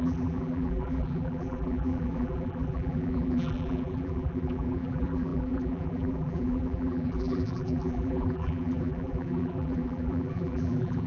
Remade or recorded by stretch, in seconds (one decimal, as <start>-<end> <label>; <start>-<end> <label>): 0.0-11.1 remade